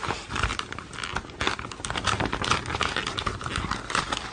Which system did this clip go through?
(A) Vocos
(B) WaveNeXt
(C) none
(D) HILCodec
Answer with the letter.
C